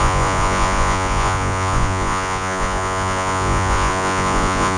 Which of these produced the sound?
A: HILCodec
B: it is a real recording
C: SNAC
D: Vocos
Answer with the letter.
D